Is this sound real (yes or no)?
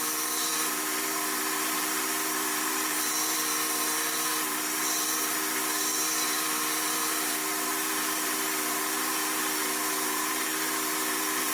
no